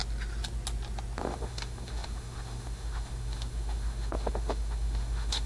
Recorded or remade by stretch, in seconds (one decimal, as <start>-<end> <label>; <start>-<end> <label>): 0.0-1.2 recorded; 1.2-5.5 remade

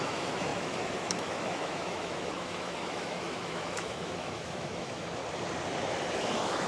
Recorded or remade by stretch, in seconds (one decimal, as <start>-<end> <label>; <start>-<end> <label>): 0.0-5.2 remade; 5.2-6.1 recorded; 6.1-6.7 remade

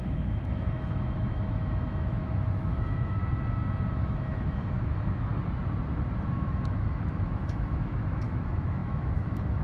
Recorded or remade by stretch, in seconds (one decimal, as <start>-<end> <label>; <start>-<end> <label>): 0.0-3.2 remade; 3.2-3.9 recorded; 3.9-5.3 remade; 5.3-6.3 recorded; 6.3-9.6 remade